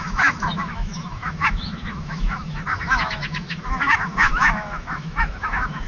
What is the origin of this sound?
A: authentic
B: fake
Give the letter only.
B